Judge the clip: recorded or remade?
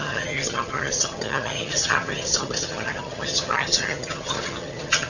remade